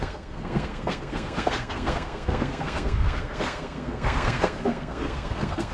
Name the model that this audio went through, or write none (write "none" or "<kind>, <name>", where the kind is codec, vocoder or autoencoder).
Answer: codec, SNAC